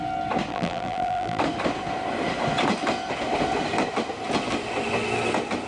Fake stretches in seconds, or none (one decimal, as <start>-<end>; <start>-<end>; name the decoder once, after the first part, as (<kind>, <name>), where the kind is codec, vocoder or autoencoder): 0.5-1.4 (vocoder, BigVGAN v2)